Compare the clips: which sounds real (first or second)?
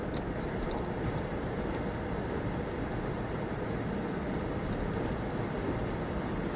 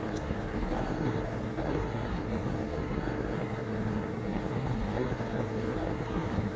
first